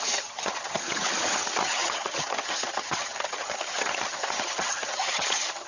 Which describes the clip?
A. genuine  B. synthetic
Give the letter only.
B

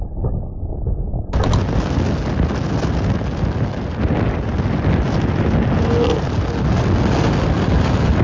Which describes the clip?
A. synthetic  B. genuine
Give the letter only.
B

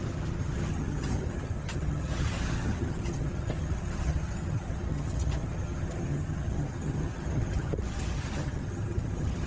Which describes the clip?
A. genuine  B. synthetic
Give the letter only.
B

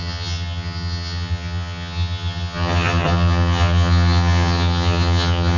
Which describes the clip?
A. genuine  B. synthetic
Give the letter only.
B